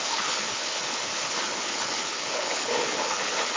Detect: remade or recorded remade